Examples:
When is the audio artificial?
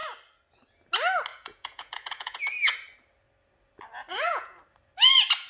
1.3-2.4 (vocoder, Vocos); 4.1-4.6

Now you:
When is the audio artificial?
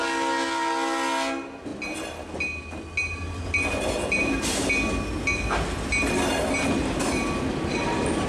none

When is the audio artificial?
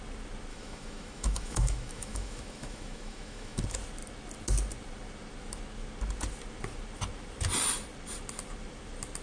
0.5-3.6 (autoencoder, DAC-VAE)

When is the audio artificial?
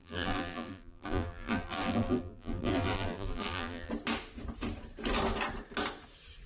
0.0-3.9 (vocoder, BigVGAN v2)